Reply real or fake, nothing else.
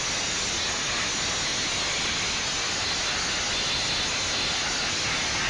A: real